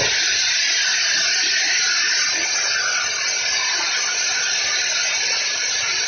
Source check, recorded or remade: recorded